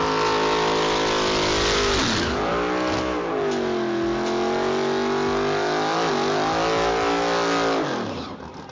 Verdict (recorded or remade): recorded